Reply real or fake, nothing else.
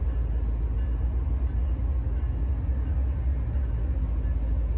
real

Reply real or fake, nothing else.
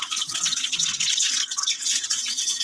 fake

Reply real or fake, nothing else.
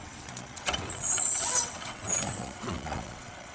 fake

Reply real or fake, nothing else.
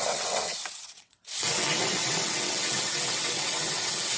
fake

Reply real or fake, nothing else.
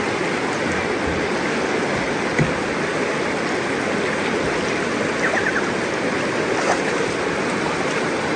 real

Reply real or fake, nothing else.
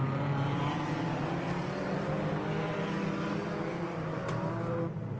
real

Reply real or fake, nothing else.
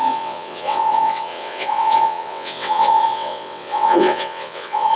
fake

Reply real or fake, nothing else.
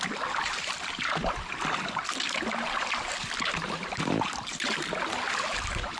real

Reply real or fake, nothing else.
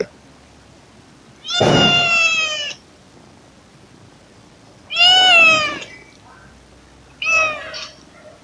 real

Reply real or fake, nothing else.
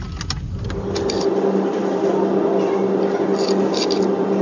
real